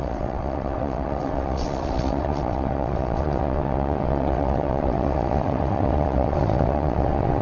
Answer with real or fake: fake